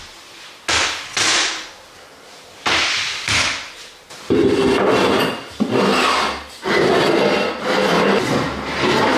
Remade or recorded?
recorded